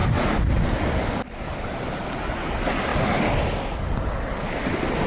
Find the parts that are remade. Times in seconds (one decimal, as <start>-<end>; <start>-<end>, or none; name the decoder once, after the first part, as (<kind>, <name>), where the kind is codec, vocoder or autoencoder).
none